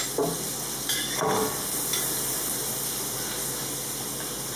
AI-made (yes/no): no